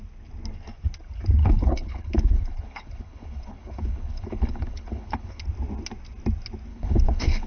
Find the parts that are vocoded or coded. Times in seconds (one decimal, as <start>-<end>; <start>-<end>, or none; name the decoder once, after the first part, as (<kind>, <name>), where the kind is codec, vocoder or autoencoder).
1.4-5.4 (codec, HILCodec); 6.7-7.5